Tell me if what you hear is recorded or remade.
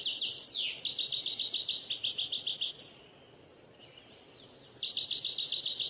remade